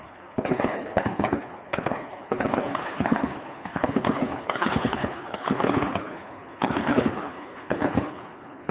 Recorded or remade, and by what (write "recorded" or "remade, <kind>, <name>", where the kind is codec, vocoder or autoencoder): remade, codec, HILCodec